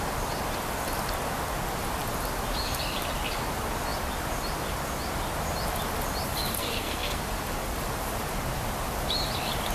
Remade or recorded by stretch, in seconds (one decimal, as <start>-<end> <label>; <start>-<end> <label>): 0.0-6.6 recorded; 6.6-7.2 remade; 7.2-9.7 recorded